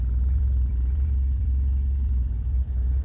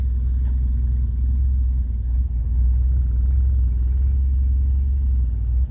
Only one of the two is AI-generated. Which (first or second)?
first